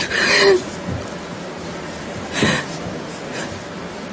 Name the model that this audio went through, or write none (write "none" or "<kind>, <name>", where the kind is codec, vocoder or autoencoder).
none